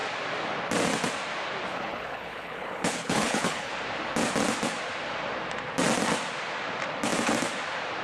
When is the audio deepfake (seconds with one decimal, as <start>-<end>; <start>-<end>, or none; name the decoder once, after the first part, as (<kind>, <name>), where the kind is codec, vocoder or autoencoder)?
1.7-3.7 (codec, HILCodec)